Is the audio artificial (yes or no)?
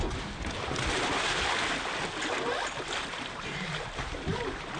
no